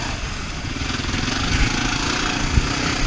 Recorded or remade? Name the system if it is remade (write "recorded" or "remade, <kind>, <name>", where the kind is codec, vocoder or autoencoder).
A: recorded